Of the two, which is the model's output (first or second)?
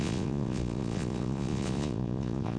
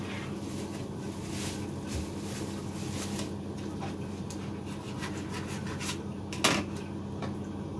first